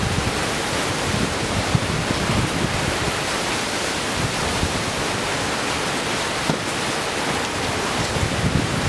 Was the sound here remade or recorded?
remade